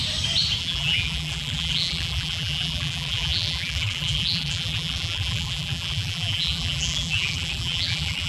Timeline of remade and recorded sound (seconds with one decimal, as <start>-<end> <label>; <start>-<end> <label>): 0.0-0.6 recorded; 0.6-8.3 remade